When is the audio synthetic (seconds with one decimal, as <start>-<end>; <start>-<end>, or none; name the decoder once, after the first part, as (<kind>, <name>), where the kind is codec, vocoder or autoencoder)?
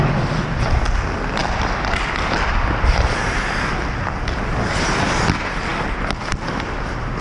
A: none